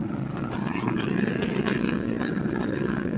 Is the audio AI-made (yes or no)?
yes